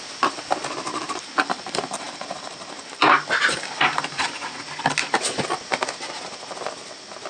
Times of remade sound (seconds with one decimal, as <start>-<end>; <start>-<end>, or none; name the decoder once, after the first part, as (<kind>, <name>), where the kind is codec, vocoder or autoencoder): 0.9-4.6 (vocoder, BigVGAN v2)